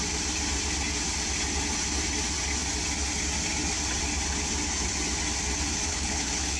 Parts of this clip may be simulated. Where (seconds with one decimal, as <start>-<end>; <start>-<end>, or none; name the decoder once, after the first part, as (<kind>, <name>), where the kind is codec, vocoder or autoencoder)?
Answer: 5.9-6.6 (codec, HILCodec)